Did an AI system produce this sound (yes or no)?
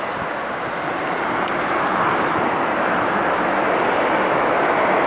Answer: no